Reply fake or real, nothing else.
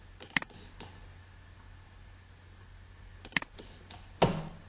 real